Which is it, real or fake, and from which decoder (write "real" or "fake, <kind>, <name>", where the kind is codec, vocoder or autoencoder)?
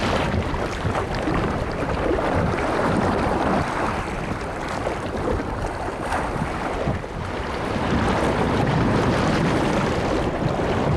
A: fake, vocoder, BigVGAN v2